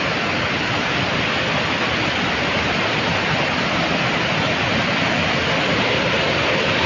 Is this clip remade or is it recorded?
recorded